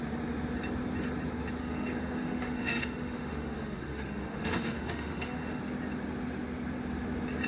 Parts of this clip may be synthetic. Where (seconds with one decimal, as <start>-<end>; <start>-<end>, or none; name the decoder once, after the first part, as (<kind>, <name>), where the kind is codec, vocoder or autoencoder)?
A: 1.6-5.6 (autoencoder, DAC-VAE)